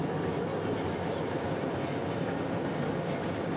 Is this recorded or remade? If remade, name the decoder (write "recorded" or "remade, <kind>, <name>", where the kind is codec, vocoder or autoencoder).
recorded